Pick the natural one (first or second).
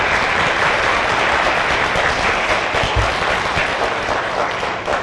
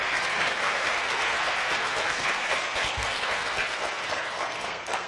first